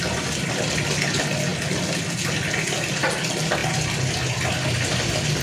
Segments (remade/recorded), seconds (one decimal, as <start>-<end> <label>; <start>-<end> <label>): 0.0-3.6 recorded; 3.6-4.1 remade; 4.1-5.4 recorded